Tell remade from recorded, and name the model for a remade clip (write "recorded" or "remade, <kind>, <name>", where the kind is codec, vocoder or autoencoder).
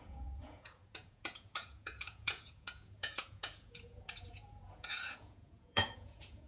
remade, vocoder, Vocos